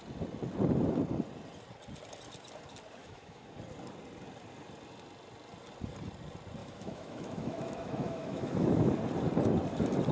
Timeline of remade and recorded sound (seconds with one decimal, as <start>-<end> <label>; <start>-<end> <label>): 0.0-3.0 recorded; 3.0-3.5 remade; 3.5-6.6 recorded; 6.6-8.9 remade; 8.9-10.1 recorded